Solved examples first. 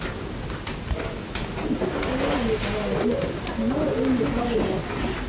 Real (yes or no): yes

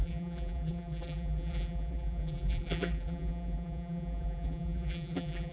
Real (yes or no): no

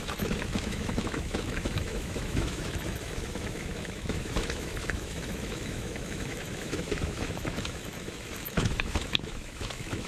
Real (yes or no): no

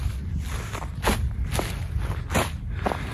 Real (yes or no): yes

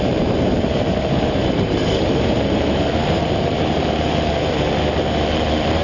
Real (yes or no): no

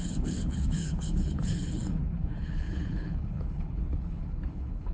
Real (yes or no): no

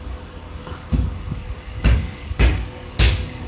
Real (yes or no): no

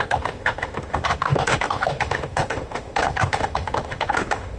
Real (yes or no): no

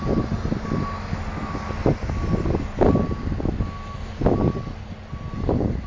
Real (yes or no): yes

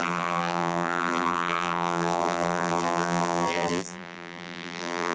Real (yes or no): no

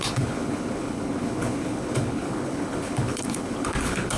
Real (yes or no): no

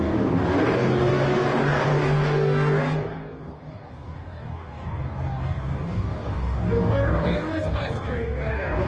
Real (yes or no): no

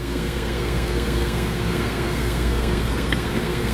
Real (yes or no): no